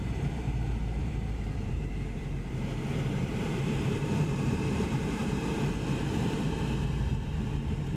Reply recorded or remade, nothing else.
remade